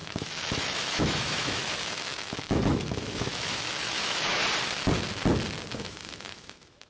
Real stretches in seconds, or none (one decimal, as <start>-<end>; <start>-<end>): 4.4-5.7